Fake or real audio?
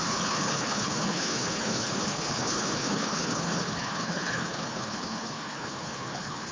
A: fake